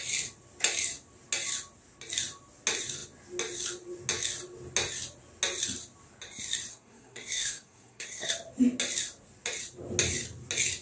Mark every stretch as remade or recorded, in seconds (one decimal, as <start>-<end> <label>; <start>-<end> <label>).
0.0-6.7 recorded; 6.7-8.3 remade; 8.3-10.8 recorded